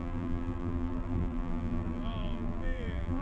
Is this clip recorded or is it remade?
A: remade